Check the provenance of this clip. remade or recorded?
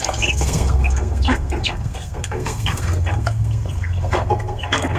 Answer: remade